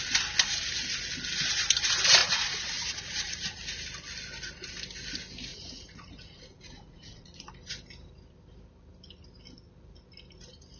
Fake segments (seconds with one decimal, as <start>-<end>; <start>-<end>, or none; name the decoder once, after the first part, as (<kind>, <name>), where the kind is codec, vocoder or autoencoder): 2.2-3.5 (vocoder, Vocos); 5.5-7.5